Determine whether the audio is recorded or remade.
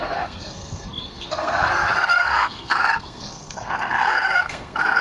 remade